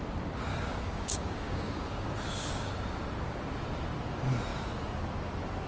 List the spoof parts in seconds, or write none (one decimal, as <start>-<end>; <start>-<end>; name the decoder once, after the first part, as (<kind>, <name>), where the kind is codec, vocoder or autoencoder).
0.5-2.7 (codec, DAC)